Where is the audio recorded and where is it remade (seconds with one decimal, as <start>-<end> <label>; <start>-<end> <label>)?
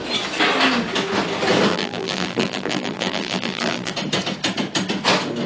0.0-1.7 recorded; 1.7-3.9 remade; 3.9-5.5 recorded